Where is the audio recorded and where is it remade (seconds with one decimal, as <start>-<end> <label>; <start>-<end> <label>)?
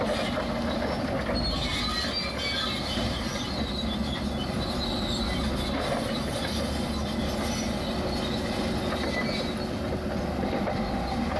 0.0-11.4 recorded